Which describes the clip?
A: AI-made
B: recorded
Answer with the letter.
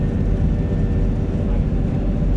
B